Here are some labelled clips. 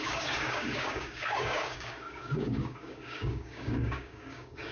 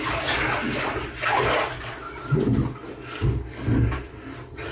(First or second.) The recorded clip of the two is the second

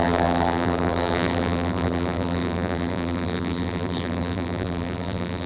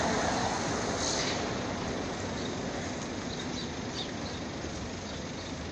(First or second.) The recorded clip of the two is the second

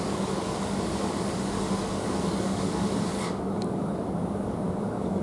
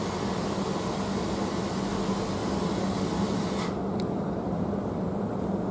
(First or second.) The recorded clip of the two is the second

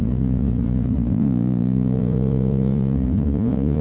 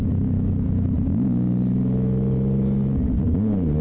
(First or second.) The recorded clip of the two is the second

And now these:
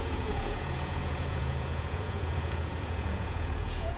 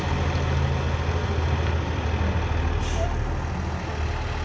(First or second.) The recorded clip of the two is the second